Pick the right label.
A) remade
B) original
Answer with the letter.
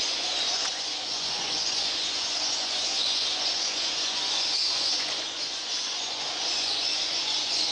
A